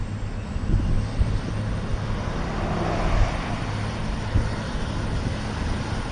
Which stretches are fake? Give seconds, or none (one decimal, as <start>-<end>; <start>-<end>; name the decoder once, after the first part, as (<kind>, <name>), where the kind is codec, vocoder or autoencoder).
none